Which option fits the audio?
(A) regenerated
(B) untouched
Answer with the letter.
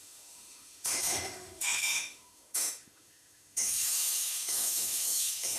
A